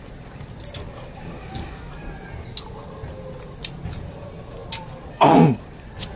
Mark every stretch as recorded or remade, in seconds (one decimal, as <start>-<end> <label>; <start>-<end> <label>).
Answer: 0.0-5.1 recorded; 5.1-5.6 remade; 5.6-6.2 recorded